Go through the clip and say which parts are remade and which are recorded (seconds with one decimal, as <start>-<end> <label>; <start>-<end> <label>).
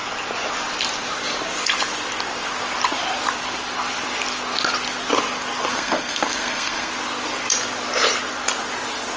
0.0-5.7 recorded; 5.7-6.9 remade; 6.9-9.2 recorded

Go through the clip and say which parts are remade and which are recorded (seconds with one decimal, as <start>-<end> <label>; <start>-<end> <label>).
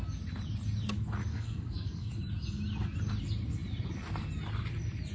0.0-1.3 recorded; 1.3-2.1 remade; 2.1-5.1 recorded